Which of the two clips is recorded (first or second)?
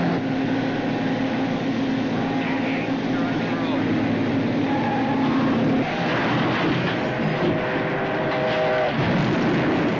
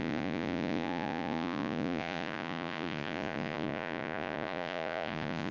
first